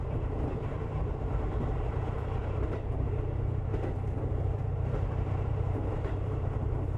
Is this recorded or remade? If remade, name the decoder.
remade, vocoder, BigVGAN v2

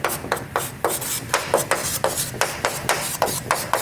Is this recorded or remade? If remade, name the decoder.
recorded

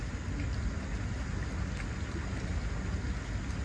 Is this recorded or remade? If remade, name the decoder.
recorded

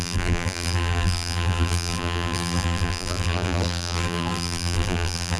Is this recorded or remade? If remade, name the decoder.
remade, vocoder, BigVGAN v2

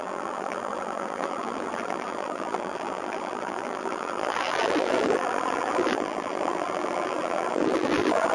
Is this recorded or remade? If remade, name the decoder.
remade, vocoder, BigVGAN v2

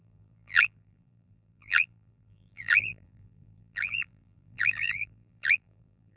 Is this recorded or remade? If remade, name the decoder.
remade, vocoder, BigVGAN v2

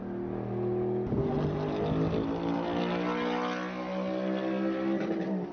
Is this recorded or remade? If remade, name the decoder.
recorded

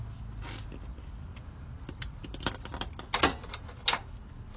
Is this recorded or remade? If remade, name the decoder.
recorded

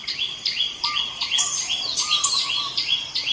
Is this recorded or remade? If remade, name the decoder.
recorded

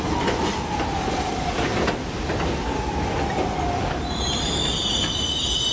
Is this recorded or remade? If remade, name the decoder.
recorded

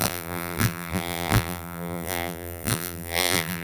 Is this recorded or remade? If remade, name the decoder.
remade, vocoder, BigVGAN v2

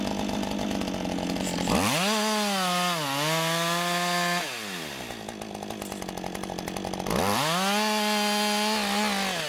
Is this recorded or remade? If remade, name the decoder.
recorded